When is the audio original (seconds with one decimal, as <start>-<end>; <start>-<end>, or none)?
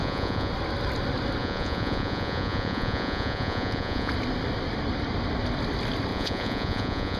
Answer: 0.5-1.4; 4.1-6.1